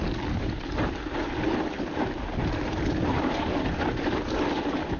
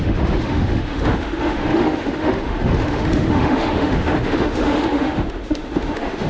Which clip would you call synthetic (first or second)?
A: second